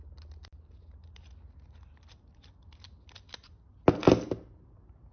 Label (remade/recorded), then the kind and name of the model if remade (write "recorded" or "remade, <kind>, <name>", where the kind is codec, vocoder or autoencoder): recorded